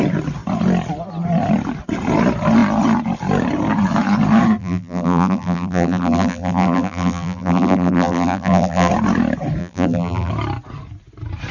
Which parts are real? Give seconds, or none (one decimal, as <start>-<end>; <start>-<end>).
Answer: 0.0-4.6; 8.9-9.6; 10.3-11.5